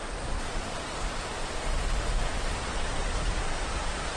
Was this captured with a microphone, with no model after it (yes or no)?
yes